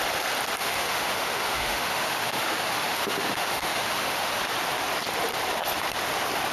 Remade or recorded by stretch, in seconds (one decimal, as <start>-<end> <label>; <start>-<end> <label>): 0.0-0.6 recorded; 0.6-4.4 remade; 4.4-6.5 recorded